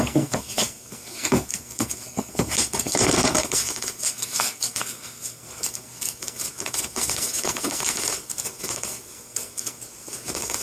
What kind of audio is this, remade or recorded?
remade